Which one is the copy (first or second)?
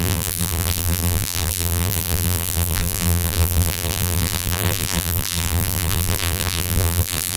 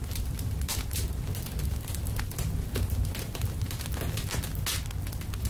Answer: first